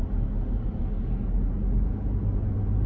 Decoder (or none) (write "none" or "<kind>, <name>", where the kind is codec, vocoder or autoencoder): none